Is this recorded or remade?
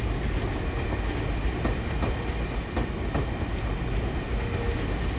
recorded